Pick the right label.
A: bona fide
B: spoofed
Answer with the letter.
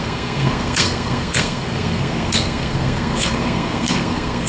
B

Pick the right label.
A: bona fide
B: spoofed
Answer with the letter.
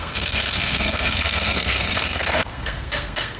B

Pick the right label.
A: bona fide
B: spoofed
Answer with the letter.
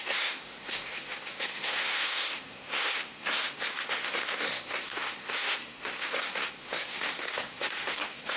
B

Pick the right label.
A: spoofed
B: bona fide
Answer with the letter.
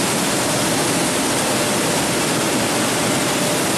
B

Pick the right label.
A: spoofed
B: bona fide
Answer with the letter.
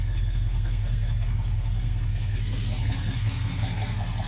A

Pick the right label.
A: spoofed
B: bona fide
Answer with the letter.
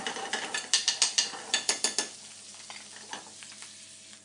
B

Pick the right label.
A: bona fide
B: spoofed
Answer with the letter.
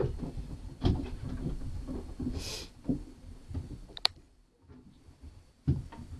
A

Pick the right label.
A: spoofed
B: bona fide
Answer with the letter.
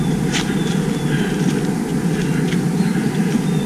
B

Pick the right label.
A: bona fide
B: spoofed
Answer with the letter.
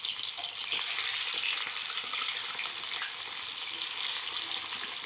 A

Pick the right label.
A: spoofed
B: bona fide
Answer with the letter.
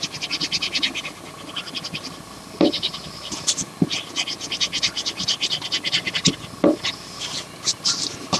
B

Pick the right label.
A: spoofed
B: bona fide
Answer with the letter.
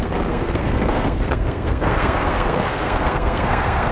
A